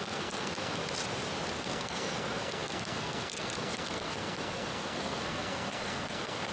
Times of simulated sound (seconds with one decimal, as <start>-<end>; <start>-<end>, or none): 0.0-0.8; 1.5-6.5